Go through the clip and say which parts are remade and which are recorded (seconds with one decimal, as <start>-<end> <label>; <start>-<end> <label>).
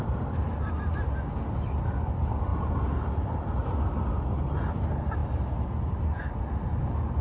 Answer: 0.0-7.2 recorded